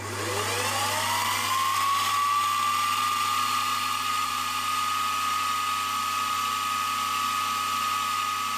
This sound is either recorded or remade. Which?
recorded